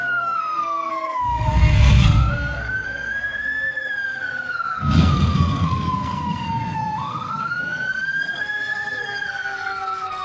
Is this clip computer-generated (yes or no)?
yes